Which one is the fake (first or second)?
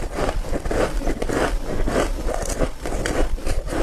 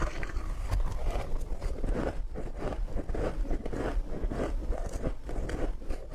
first